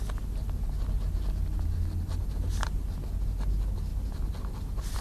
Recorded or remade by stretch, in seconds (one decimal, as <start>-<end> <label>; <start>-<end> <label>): 0.0-5.0 recorded